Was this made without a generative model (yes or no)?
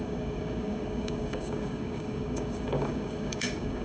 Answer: no